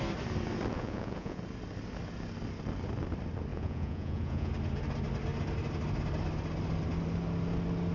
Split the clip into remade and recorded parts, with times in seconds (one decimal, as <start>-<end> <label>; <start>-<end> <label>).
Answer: 0.0-0.7 recorded; 0.7-1.4 remade; 1.4-3.5 recorded; 3.5-4.5 remade; 4.5-7.9 recorded